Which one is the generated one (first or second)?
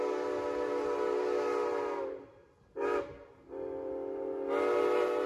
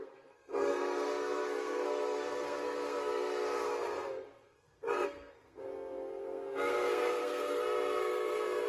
second